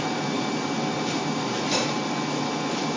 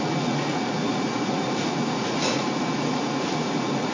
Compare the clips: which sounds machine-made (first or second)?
second